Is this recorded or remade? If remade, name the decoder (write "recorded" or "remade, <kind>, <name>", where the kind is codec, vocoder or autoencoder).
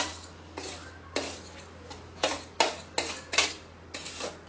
recorded